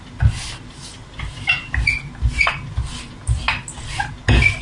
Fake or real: real